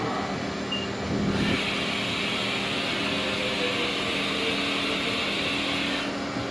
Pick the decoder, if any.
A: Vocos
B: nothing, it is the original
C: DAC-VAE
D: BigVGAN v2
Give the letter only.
B